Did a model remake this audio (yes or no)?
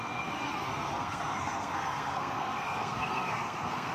yes